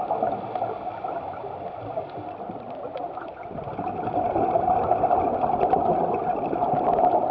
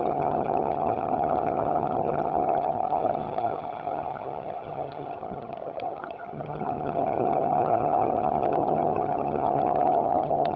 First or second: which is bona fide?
first